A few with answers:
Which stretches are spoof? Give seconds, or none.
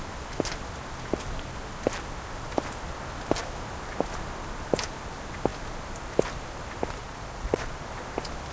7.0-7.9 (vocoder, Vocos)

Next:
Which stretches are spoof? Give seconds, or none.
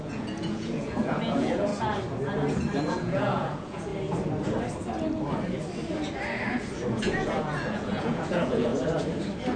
0.0-1.7 (vocoder, Vocos); 2.8-3.9; 7.0-8.7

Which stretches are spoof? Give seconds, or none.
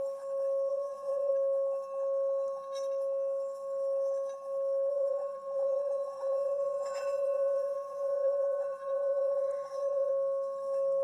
0.7-1.3 (vocoder, Vocos); 4.9-10.1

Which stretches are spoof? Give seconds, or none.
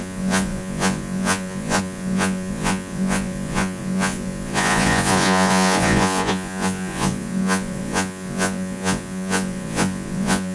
0.0-10.5 (vocoder, Vocos)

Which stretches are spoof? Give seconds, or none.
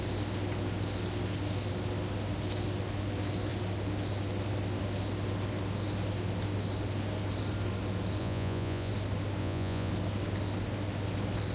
8.2-8.9 (vocoder, Vocos); 9.4-9.9